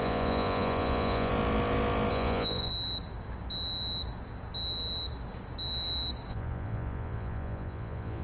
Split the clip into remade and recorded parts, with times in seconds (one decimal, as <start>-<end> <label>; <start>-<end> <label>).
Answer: 0.0-1.3 remade; 1.3-2.1 recorded; 2.1-2.7 remade; 2.7-6.3 recorded; 6.3-8.2 remade